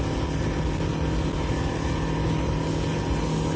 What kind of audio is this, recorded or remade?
recorded